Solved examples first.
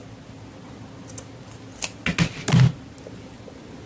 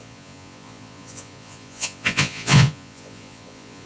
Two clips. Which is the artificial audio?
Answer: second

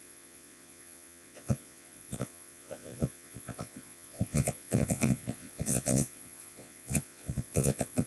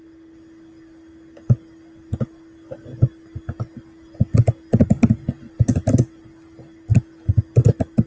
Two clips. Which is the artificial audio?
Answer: first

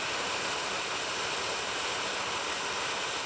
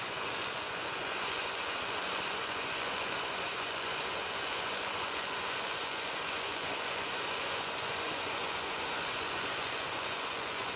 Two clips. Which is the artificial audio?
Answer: second